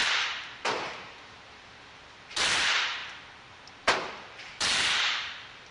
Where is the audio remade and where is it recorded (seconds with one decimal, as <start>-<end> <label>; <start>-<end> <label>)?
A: 0.0-3.0 remade; 3.0-4.1 recorded; 4.1-5.7 remade